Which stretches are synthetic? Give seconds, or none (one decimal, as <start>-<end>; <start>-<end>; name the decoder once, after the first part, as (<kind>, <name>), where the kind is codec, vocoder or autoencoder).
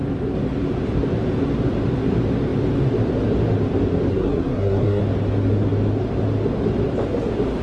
4.1-5.0 (codec, SNAC)